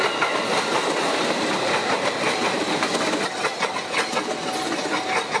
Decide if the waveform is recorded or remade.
recorded